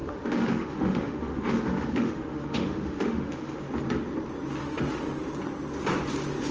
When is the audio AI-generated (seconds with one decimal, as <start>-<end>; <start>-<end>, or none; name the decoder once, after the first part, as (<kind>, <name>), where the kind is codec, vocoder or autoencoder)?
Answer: 0.0-3.6 (autoencoder, DAC-VAE); 4.6-5.2